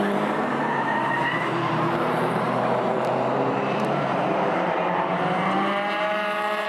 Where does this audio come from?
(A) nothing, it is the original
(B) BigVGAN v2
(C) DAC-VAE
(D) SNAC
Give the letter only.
B